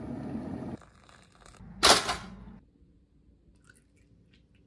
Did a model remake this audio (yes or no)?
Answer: no